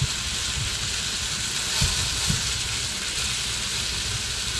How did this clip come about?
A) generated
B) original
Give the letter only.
B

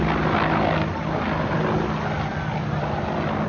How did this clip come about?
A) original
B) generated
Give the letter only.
A